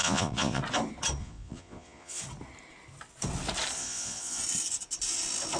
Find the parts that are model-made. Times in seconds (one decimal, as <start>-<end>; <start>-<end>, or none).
0.0-0.6; 1.2-2.2; 3.8-4.4